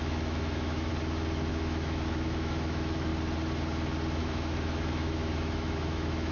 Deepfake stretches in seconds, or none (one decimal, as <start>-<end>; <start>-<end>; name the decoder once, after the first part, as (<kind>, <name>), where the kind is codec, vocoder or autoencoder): 0.0-0.9 (autoencoder, DAC-VAE); 1.5-3.1; 4.2-6.3